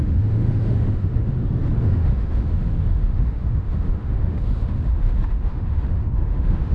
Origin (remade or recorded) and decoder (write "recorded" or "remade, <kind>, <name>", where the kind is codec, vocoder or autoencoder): remade, autoencoder, DAC-VAE